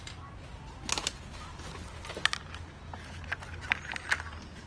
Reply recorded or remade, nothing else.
recorded